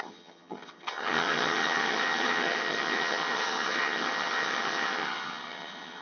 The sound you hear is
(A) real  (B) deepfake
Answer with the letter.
B